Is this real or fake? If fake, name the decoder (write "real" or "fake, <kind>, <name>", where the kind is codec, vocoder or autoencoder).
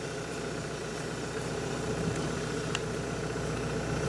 fake, vocoder, BigVGAN v2